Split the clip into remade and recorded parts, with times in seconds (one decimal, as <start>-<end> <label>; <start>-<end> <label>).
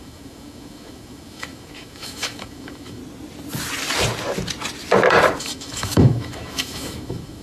0.0-3.0 remade; 3.0-5.4 recorded; 5.4-7.4 remade